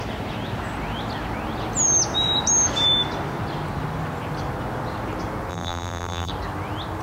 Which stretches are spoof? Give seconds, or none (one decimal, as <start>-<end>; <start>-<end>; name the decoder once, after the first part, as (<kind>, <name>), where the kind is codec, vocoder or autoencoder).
5.5-6.3 (vocoder, BigVGAN v2)